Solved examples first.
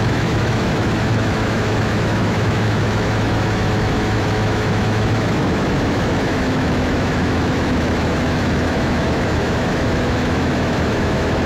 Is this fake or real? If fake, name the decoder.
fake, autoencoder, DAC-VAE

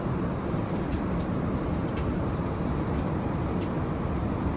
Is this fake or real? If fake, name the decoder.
real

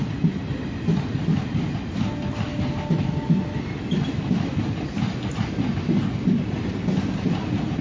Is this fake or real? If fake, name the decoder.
real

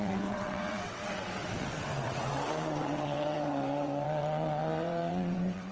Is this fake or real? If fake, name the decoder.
fake, vocoder, WaveNeXt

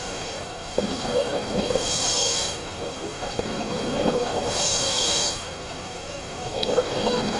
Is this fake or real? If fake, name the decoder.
fake, codec, DAC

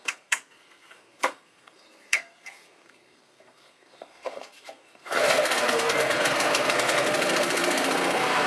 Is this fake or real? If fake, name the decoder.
fake, codec, SNAC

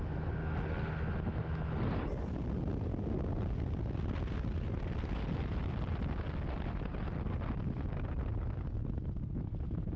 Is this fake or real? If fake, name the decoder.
real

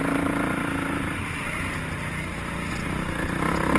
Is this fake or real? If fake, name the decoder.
real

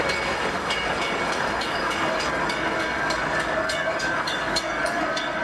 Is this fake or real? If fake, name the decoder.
fake, codec, DAC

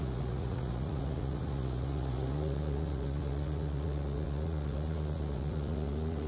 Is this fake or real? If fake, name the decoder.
fake, vocoder, Vocos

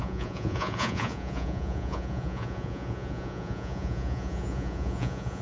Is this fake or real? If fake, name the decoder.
fake, vocoder, Vocos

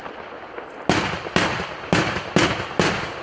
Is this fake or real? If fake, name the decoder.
real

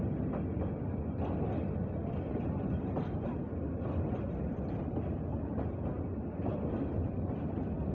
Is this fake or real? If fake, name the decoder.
real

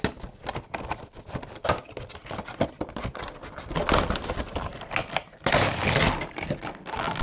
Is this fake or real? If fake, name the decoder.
real